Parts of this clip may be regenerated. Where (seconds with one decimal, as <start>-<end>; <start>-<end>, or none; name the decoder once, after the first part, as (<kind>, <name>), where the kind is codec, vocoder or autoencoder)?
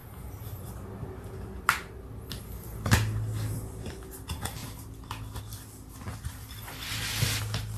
none